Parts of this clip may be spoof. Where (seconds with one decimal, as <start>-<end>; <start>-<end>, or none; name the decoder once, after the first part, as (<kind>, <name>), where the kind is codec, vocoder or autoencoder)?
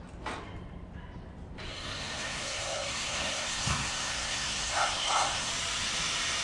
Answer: 1.7-5.5 (codec, SNAC)